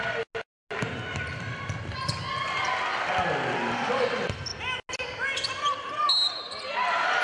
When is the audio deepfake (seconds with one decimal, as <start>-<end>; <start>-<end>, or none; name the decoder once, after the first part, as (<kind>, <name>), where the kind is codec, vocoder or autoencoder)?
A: none